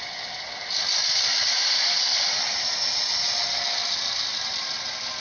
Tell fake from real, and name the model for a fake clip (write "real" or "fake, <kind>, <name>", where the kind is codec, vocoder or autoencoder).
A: real